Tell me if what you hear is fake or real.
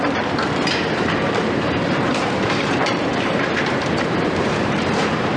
fake